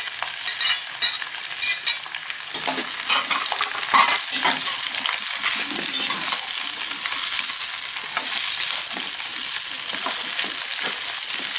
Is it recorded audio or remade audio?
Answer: recorded